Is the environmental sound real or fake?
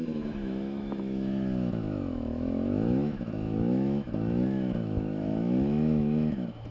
fake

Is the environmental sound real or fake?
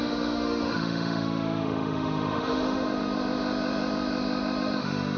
fake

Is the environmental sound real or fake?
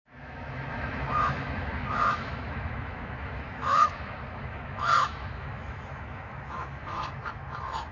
fake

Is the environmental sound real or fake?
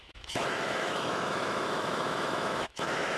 fake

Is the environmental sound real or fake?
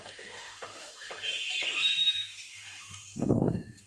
fake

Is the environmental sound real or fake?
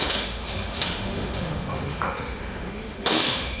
fake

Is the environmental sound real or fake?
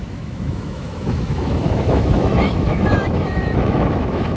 fake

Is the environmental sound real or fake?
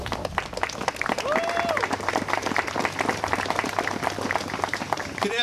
real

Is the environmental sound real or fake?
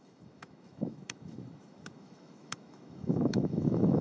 fake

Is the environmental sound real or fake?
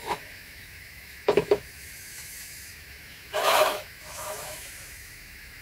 fake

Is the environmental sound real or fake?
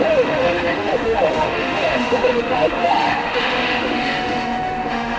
fake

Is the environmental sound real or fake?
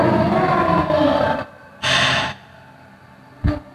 real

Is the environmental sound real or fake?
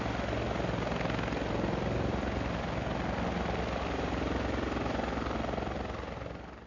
real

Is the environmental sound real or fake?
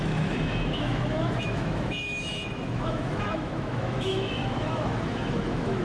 fake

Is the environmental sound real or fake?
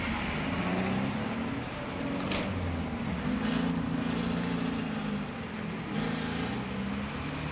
real